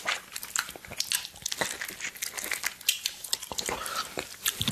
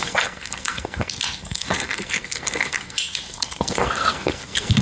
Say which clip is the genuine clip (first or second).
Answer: first